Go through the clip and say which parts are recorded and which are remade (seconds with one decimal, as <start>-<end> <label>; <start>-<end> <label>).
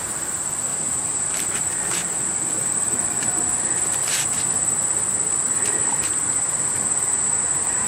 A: 0.0-0.7 recorded; 0.7-1.5 remade; 1.5-6.3 recorded; 6.3-7.9 remade